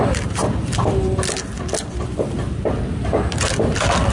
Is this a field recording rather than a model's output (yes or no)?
yes